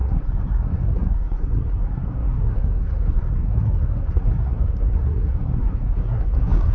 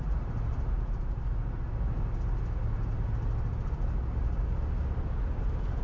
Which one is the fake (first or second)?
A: first